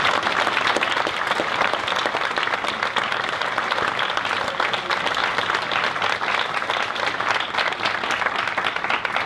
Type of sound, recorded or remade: recorded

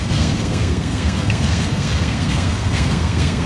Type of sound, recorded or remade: remade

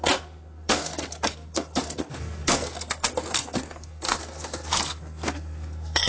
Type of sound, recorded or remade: remade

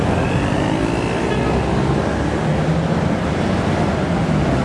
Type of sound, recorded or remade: recorded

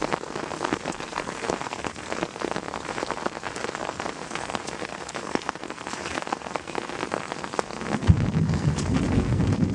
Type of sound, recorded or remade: remade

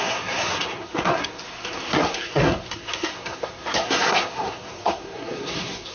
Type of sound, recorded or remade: remade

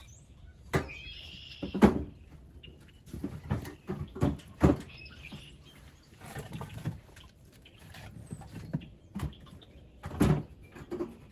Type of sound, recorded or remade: recorded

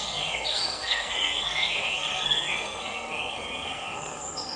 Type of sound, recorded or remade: remade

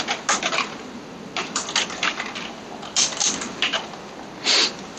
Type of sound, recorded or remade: recorded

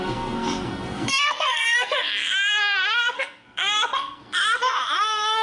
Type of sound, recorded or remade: remade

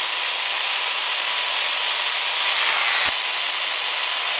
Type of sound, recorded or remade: recorded